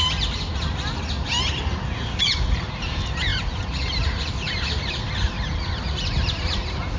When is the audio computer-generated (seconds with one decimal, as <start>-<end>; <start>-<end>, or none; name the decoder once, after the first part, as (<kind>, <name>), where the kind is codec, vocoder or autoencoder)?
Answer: none